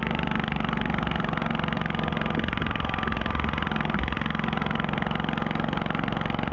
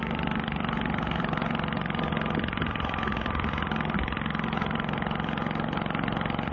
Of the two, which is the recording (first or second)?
first